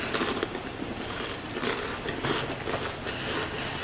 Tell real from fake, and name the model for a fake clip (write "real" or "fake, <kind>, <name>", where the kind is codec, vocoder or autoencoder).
real